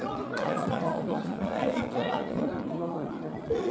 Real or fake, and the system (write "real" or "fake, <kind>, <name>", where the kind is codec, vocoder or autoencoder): fake, vocoder, Vocos